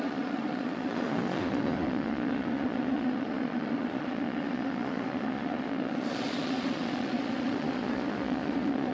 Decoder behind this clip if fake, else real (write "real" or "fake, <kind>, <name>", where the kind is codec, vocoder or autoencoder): fake, vocoder, Vocos